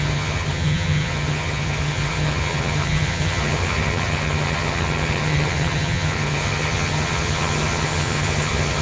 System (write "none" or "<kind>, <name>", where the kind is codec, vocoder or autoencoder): vocoder, HiFi-GAN